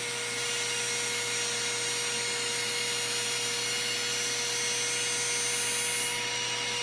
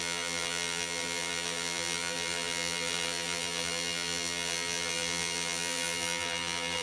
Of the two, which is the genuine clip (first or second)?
first